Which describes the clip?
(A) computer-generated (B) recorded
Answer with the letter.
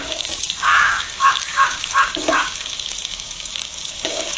A